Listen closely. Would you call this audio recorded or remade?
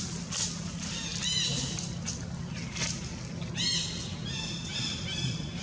recorded